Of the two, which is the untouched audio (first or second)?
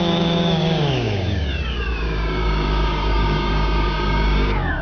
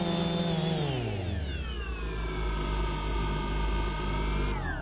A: second